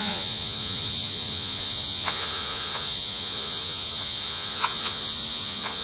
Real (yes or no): no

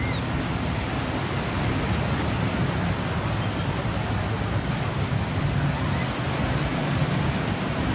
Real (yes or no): yes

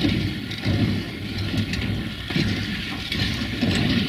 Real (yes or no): yes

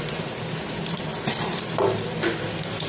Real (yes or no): yes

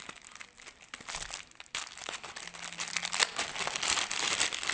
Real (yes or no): yes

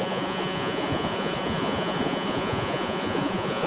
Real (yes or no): no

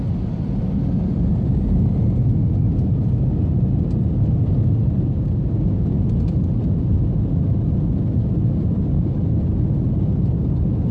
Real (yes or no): yes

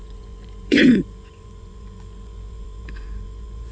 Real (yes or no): no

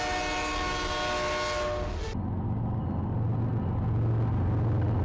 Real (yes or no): yes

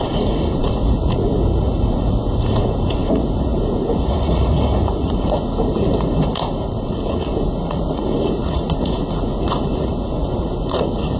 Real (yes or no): no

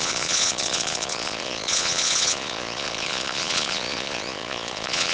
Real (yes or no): no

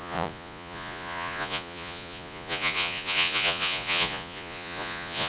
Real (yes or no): no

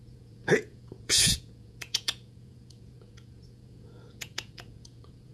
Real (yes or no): no